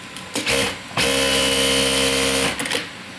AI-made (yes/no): no